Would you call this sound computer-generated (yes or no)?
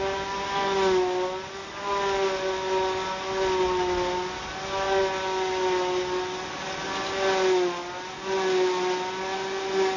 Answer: no